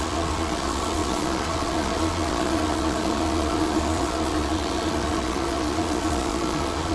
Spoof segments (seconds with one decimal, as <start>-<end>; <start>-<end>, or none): 0.0-6.9